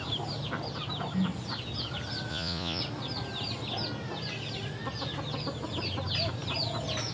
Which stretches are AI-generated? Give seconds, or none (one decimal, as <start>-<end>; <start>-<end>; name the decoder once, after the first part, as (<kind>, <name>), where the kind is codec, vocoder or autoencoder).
2.3-2.8 (vocoder, Vocos)